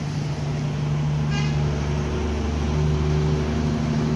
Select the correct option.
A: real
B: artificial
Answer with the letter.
A